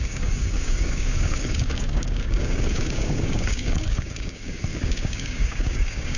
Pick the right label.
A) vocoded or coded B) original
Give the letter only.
A